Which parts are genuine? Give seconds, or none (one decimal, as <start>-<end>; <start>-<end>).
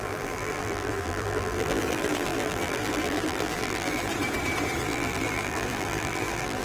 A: 4.1-4.8